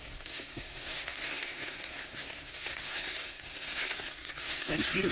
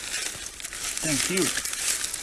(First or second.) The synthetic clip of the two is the first